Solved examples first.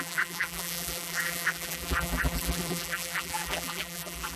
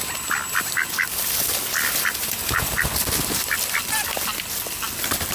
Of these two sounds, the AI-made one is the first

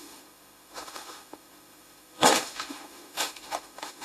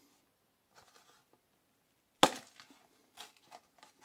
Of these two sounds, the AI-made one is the first